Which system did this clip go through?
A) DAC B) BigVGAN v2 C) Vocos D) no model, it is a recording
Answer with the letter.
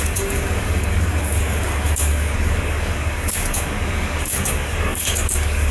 A